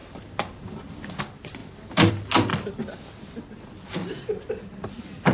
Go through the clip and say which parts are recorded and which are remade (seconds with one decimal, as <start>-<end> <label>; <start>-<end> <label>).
0.0-1.2 remade; 1.2-1.6 recorded; 1.6-2.1 remade; 2.1-4.0 recorded; 4.0-5.3 remade